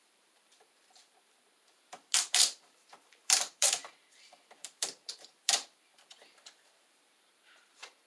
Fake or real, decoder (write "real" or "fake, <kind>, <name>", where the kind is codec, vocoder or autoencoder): fake, vocoder, BigVGAN v2